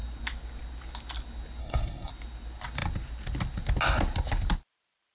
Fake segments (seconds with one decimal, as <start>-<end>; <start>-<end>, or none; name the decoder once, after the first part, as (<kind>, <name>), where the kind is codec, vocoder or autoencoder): 1.6-2.1 (codec, SNAC)